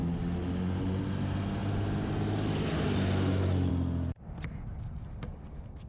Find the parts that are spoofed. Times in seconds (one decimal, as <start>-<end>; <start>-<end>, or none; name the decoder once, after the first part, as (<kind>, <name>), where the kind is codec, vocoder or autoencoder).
none